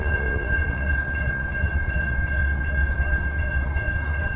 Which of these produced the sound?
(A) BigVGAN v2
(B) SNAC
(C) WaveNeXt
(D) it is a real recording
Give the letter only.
C